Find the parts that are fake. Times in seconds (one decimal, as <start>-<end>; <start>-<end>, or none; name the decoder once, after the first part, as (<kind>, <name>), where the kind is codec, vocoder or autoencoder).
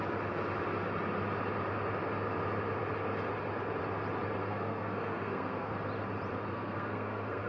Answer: 4.4-5.7 (codec, SNAC); 6.5-7.5